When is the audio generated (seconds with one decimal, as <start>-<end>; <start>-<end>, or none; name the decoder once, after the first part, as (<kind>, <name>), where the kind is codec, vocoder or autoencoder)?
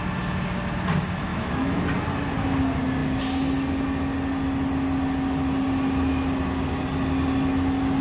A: 1.3-1.8 (autoencoder, DAC-VAE)